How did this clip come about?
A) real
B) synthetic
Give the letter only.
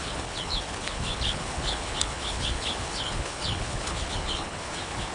B